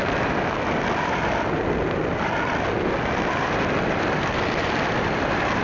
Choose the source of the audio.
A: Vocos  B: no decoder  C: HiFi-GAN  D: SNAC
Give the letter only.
B